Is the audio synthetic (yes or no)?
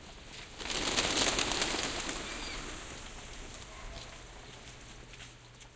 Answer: no